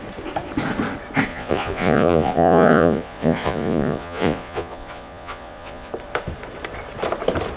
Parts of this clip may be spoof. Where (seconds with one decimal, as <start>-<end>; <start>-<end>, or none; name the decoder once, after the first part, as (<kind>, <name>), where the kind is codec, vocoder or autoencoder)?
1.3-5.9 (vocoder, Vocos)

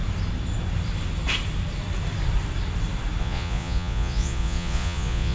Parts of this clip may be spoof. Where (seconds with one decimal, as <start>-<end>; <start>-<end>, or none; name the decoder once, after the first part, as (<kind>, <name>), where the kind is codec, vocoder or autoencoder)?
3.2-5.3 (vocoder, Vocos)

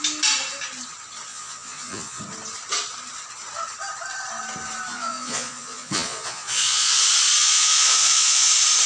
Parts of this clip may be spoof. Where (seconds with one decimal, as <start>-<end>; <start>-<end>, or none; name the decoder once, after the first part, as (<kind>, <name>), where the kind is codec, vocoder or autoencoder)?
1.3-2.2 (vocoder, Vocos); 4.9-7.0; 7.4-8.5

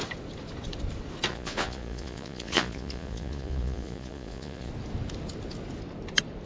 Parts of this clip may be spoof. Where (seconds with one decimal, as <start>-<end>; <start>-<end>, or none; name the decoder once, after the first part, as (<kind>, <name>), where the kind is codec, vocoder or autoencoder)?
1.3-4.7 (vocoder, Vocos)

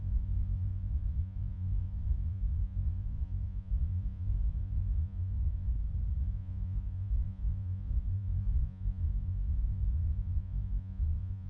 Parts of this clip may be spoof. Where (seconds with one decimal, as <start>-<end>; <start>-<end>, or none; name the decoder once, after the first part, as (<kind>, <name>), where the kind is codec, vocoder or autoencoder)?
0.0-5.7 (vocoder, Vocos); 6.2-11.5

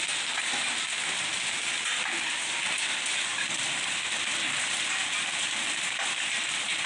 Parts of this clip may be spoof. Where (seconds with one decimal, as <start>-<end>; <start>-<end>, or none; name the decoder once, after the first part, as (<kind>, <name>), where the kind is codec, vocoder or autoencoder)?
none